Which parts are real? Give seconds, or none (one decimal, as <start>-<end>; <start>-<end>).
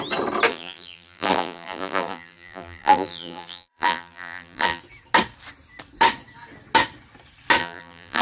0.0-0.5; 4.8-7.6